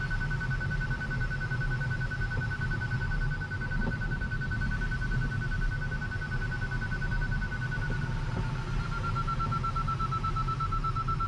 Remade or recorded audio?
recorded